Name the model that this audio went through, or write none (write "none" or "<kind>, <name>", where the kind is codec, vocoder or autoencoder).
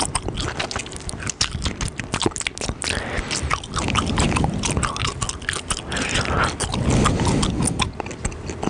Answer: none